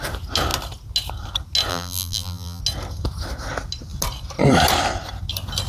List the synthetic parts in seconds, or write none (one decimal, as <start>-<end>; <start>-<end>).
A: 1.7-2.6